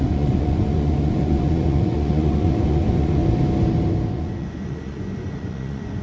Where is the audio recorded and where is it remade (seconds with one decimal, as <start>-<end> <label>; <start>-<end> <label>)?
0.0-3.2 remade; 3.2-4.1 recorded; 4.1-6.0 remade